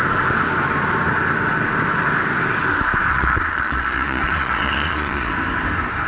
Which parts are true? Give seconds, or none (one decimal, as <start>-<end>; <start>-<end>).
0.0-3.1; 5.3-6.1